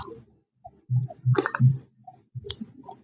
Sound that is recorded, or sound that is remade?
recorded